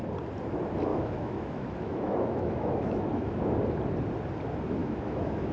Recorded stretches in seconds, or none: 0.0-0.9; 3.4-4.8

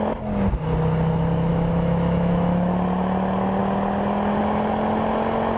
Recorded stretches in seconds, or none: 0.0-1.5; 2.7-5.6